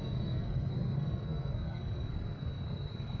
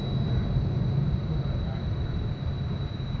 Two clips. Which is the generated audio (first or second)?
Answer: first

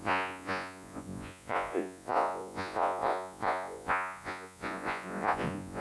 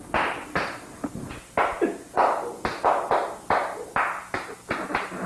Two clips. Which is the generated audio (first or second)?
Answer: first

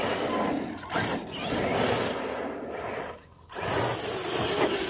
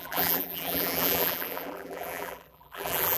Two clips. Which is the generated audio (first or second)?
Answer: second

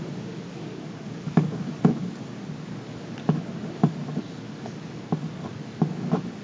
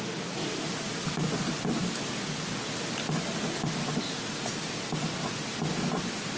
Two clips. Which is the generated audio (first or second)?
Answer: first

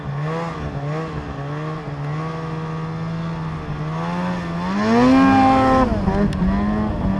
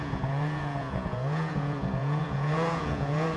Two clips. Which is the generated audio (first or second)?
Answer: second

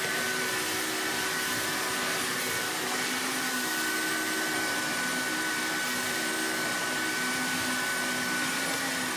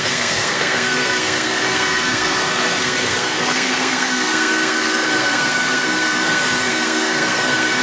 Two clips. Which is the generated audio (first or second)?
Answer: second